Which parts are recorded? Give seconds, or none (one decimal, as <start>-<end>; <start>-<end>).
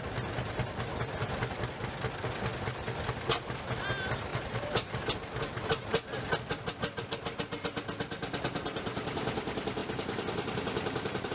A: 0.0-4.3; 4.9-9.8